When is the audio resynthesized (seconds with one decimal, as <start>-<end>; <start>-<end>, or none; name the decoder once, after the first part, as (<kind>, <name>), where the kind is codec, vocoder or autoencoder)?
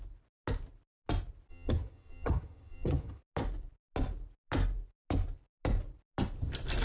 1.5-3.2 (vocoder, HiFi-GAN)